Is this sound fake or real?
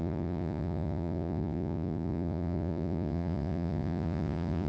fake